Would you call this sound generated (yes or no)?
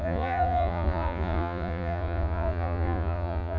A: yes